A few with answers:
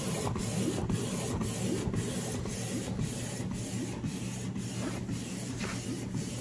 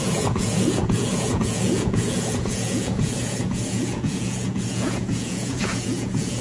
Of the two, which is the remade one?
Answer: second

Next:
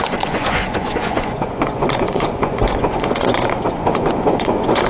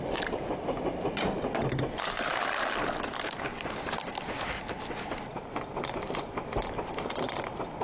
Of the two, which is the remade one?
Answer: first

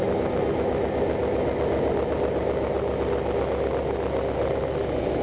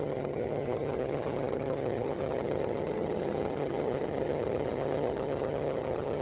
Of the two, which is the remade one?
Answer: second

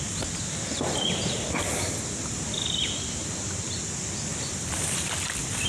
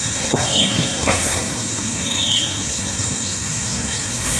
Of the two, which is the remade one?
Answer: second